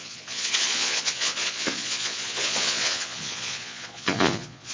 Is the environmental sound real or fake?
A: fake